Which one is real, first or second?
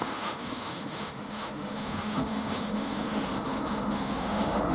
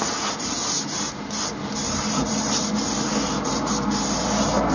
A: second